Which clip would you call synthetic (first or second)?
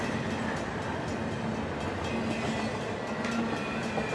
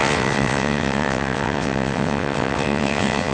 second